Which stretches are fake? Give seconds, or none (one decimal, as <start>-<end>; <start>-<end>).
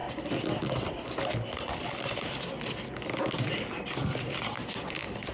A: 3.2-5.3